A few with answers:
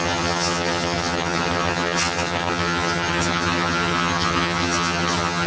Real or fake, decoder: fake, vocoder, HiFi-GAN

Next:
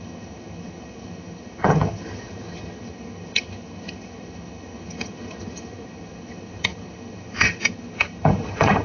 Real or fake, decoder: fake, vocoder, HiFi-GAN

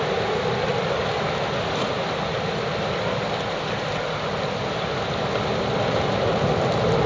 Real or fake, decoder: real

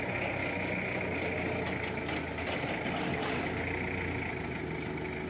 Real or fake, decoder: real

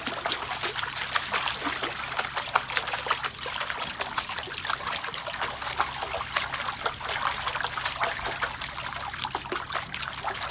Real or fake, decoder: real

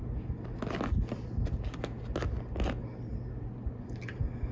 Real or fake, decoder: real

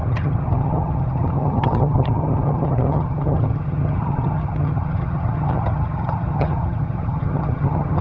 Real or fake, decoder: fake, vocoder, HiFi-GAN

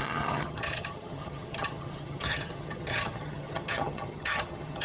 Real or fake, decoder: fake, vocoder, HiFi-GAN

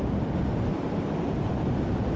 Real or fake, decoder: real